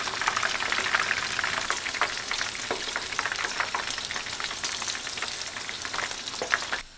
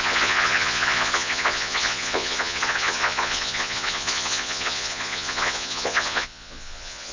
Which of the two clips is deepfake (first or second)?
second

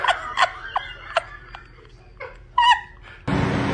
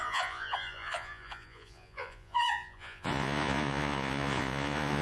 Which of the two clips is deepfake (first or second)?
second